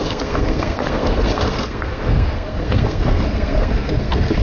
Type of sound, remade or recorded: remade